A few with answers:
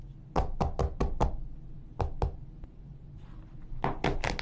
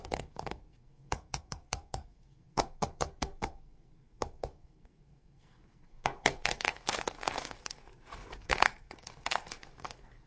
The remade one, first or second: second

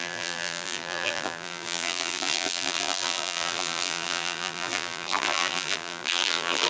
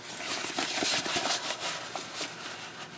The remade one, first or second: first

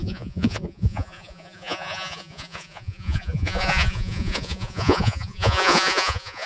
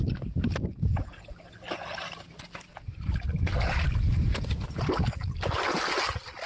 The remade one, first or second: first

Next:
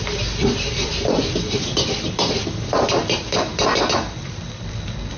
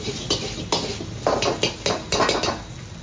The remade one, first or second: first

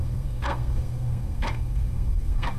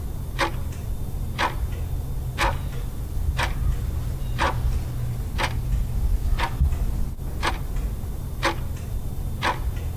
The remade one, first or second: first